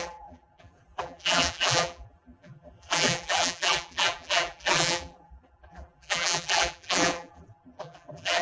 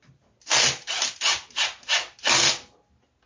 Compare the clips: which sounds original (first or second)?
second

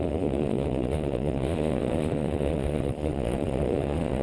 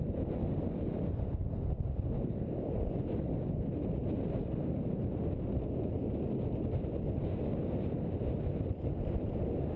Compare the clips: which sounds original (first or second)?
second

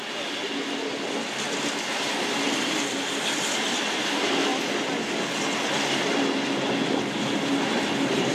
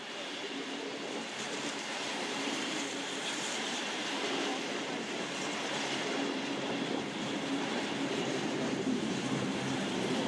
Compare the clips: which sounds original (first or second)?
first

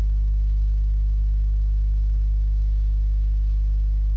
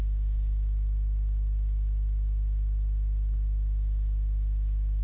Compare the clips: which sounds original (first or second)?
second